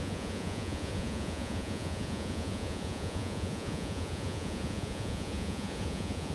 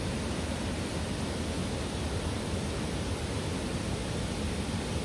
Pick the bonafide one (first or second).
second